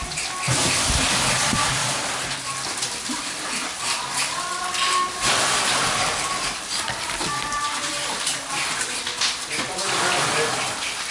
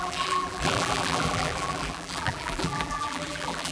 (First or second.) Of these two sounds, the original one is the first